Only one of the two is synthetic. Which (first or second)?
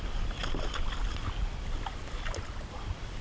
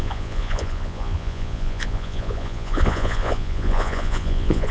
second